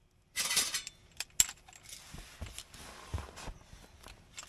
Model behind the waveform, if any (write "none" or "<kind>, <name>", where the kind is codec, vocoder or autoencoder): none